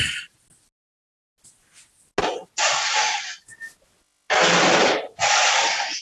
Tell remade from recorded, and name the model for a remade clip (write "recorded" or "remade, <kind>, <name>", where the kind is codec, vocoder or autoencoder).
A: recorded